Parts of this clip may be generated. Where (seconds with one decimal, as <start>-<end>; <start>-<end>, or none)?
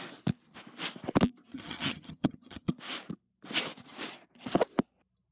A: 1.5-2.7